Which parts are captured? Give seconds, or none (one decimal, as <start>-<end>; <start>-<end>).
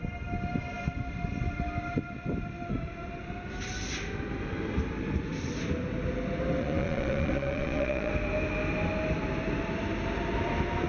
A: 0.0-6.6; 8.1-10.9